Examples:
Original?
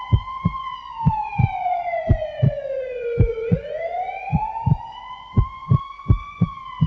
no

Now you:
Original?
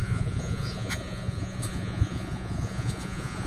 no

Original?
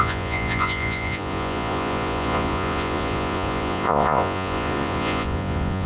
no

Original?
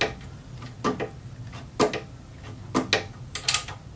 yes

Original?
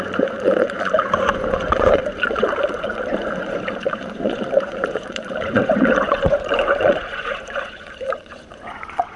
no